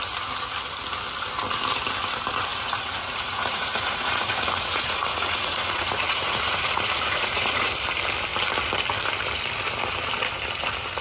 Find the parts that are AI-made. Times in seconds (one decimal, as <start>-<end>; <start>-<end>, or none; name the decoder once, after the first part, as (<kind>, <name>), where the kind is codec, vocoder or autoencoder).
2.5-7.7 (vocoder, Vocos)